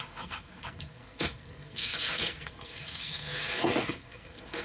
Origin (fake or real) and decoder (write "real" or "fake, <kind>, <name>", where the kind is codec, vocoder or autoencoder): fake, codec, SNAC